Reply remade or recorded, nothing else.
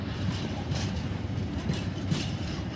remade